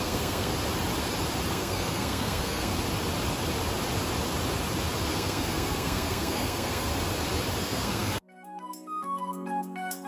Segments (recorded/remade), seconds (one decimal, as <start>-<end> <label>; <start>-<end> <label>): 0.0-0.5 remade; 0.5-1.5 recorded; 1.5-2.7 remade; 2.7-5.1 recorded; 5.1-6.9 remade; 6.9-7.6 recorded; 7.6-10.1 remade